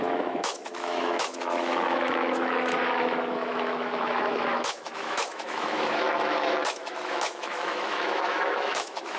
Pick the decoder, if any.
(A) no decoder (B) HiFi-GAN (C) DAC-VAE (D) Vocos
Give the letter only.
C